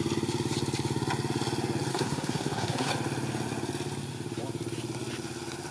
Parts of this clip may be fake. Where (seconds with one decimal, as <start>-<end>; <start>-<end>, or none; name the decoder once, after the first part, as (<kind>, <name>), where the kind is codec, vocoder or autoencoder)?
1.9-2.9 (codec, SNAC)

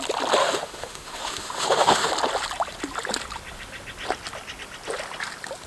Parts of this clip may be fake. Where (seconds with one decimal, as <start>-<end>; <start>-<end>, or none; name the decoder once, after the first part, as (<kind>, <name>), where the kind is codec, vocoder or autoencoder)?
0.4-2.1 (autoencoder, DAC-VAE)

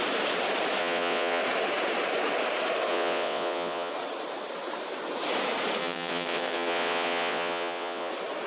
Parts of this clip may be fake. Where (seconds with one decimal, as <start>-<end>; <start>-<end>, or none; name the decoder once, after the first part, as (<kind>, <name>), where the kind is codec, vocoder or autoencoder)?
0.8-1.4 (vocoder, WaveNeXt); 2.9-3.9; 5.8-8.1

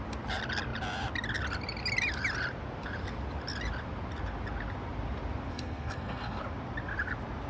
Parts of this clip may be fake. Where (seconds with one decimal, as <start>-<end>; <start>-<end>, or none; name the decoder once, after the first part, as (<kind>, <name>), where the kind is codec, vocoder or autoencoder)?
5.5-6.4 (codec, SNAC)

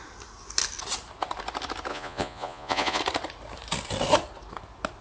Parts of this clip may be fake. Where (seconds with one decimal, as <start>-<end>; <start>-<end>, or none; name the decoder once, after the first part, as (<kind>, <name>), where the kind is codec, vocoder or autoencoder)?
1.9-3.0 (vocoder, Vocos)

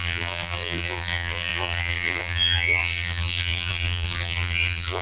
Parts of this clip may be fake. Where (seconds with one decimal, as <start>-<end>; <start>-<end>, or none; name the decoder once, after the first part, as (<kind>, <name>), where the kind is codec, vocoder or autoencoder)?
0.0-5.0 (vocoder, BigVGAN v2)